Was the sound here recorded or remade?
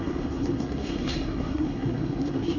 remade